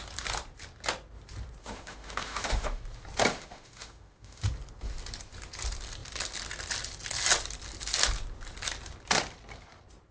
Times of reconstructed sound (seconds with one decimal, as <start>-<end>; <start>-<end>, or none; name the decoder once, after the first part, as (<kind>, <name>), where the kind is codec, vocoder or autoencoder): 1.6-2.8 (autoencoder, DAC-VAE); 3.3-4.4